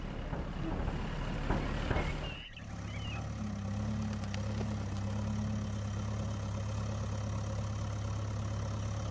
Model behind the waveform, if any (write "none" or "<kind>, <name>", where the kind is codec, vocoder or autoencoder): none